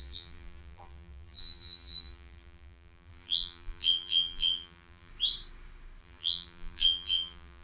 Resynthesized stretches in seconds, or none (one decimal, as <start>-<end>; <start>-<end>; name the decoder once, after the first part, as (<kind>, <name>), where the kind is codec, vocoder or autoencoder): 0.0-5.1 (vocoder, BigVGAN v2); 6.0-7.6

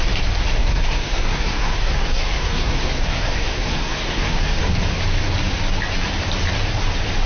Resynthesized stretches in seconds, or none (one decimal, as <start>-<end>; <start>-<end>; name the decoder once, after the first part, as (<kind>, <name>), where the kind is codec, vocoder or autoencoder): 0.6-4.6 (codec, SNAC)

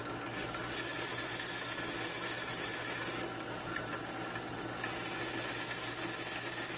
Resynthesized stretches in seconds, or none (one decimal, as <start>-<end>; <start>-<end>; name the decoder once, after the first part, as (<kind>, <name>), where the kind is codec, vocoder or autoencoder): none

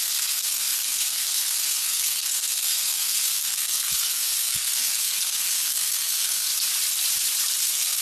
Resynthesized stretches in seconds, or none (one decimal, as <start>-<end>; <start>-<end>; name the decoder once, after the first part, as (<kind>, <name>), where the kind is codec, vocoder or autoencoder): 0.0-6.5 (codec, SNAC); 7.6-8.0

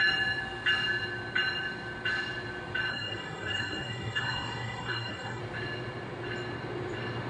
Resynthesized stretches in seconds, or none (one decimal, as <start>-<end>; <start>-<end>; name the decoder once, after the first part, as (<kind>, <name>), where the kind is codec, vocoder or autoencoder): 2.9-5.4 (codec, SNAC)